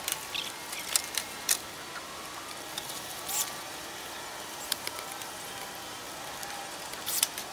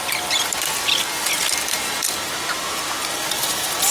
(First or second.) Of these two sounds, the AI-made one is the first